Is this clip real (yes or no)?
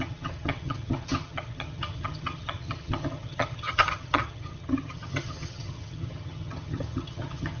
no